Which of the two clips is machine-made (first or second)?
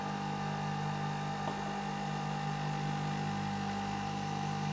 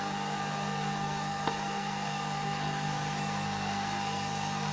second